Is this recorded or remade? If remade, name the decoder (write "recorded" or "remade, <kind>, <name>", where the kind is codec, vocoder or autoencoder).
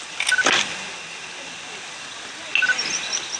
recorded